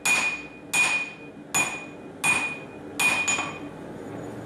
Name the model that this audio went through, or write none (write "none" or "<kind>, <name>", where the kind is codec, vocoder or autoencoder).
none